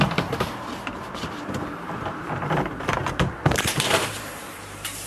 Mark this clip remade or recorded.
remade